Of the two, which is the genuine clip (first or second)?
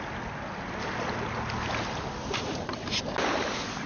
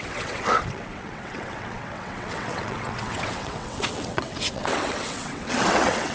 first